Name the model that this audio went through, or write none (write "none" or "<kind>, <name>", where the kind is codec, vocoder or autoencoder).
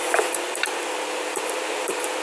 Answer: vocoder, BigVGAN v2